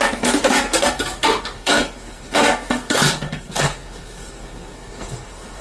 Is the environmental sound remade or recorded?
remade